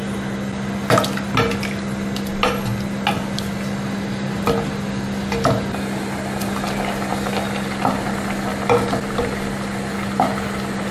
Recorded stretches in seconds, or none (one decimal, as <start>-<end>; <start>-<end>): 0.0-10.9